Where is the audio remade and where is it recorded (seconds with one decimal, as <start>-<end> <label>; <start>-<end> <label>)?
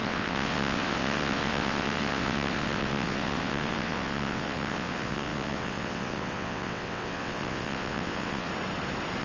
0.0-8.5 remade; 8.5-9.2 recorded